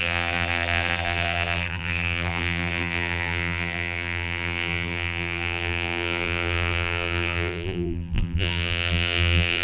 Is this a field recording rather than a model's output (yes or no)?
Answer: no